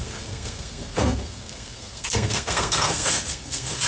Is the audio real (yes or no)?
no